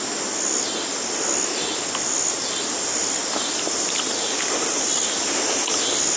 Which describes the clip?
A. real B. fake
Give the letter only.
A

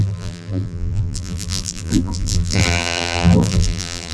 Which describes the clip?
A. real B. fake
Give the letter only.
B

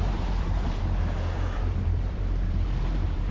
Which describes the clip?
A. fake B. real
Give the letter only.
A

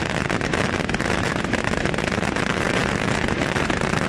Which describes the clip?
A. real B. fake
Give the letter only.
B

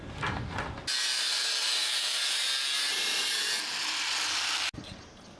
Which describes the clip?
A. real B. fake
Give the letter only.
A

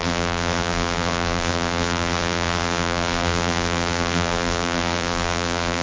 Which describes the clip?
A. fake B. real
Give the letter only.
A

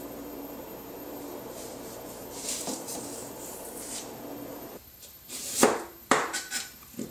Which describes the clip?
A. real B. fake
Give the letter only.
B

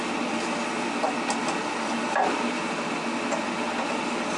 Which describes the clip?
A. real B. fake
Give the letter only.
B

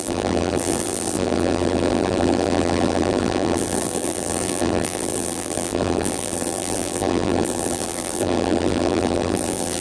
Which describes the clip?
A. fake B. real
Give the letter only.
A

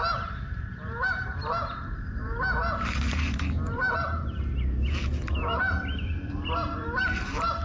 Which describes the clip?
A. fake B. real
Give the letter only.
A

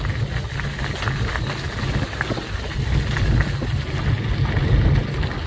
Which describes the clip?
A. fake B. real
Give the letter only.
B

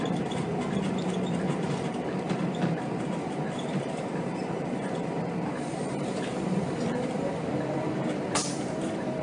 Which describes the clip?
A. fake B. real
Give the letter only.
A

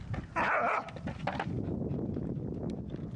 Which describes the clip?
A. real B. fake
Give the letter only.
A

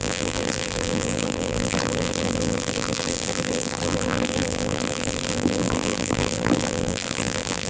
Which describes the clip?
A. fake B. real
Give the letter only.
A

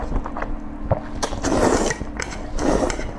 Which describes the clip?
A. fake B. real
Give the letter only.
B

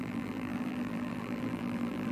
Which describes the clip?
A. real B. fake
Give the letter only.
B